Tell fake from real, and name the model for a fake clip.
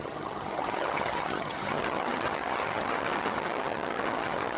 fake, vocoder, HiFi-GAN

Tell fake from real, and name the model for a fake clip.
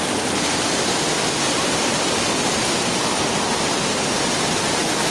real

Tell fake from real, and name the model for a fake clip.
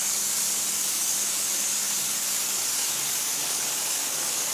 fake, codec, DAC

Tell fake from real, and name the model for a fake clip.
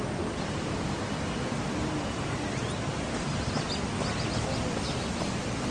real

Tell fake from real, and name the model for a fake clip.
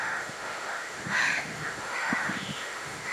fake, autoencoder, DAC-VAE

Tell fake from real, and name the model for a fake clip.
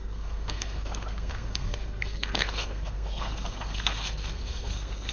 fake, codec, SNAC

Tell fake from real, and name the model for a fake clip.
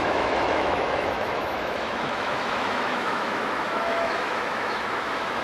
fake, autoencoder, DAC-VAE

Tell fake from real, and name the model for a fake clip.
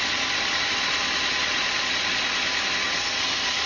real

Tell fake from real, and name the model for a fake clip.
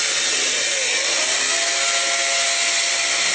real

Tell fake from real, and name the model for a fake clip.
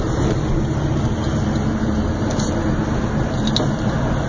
real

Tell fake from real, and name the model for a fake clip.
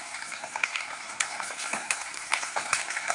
fake, codec, SNAC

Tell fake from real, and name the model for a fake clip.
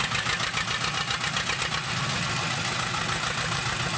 real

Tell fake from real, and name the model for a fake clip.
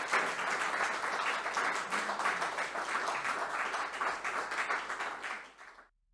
real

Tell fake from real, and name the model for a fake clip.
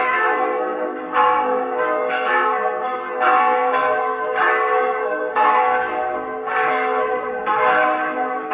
fake, codec, SNAC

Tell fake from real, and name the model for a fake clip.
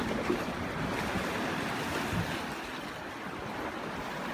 real